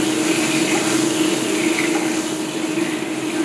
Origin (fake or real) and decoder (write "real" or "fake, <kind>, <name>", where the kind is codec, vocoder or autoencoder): real